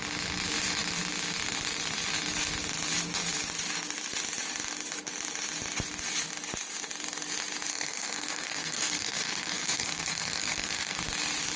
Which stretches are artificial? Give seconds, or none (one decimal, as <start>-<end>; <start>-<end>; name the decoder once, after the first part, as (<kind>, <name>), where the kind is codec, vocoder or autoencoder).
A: 7.7-11.0 (codec, SNAC)